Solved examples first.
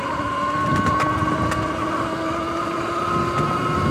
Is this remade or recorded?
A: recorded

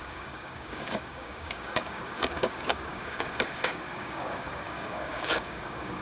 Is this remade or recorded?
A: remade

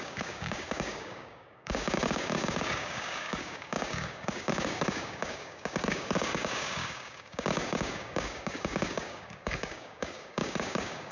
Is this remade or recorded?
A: remade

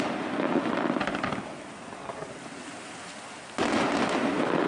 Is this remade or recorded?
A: recorded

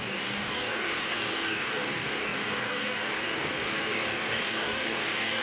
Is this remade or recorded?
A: remade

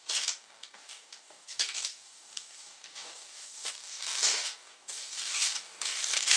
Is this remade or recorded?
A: remade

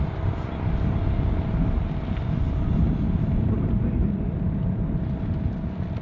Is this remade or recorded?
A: recorded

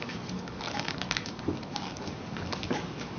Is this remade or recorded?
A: remade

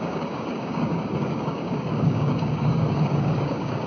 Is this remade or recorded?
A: remade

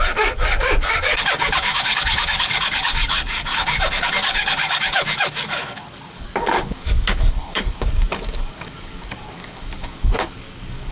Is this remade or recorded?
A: remade